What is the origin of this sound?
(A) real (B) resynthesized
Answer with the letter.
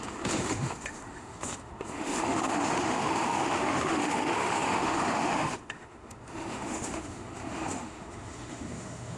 B